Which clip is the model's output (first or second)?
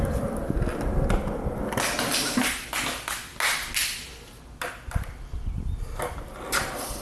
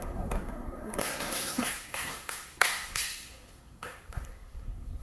second